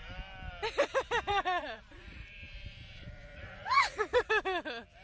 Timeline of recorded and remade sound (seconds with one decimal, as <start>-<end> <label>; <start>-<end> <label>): 0.0-1.3 recorded; 1.3-4.3 remade; 4.3-5.0 recorded